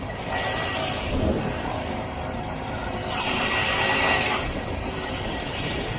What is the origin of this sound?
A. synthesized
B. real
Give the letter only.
A